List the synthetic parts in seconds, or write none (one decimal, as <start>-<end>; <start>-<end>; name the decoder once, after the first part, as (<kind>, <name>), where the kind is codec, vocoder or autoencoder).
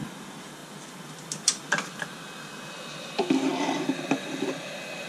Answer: none